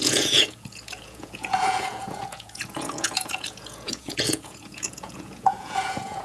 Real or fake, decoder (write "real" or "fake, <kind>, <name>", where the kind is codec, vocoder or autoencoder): fake, vocoder, Vocos